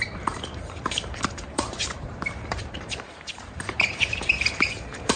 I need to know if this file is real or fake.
fake